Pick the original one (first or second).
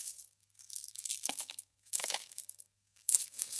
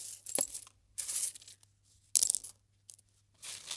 second